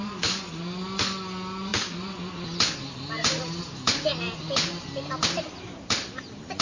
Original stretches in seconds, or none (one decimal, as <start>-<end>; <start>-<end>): 0.0-6.6